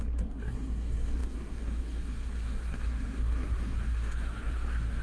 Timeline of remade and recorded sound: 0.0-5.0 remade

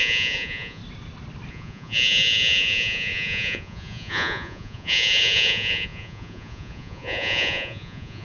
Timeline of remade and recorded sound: 0.0-0.8 remade; 0.8-1.5 recorded; 1.5-8.2 remade

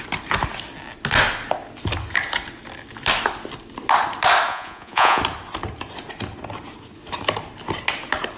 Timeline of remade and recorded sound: 0.0-4.5 recorded; 4.5-5.2 remade; 5.2-8.4 recorded

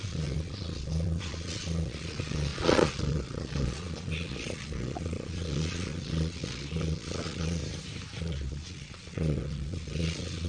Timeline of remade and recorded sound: 0.0-7.6 remade; 7.6-8.2 recorded; 8.2-10.5 remade

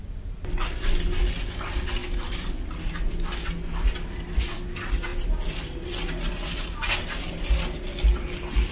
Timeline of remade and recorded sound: 0.0-8.7 recorded

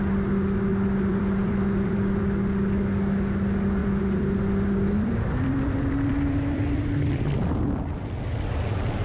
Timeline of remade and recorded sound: 0.0-0.7 recorded; 0.7-2.2 remade; 2.2-3.8 recorded; 3.8-7.5 remade; 7.5-9.0 recorded

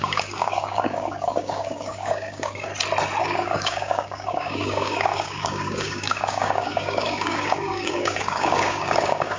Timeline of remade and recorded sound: 0.0-2.7 remade; 2.7-3.2 recorded; 3.2-9.4 remade

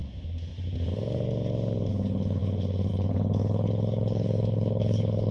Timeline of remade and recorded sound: 0.0-1.9 recorded; 1.9-5.3 remade